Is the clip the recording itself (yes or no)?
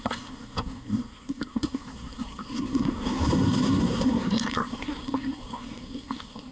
no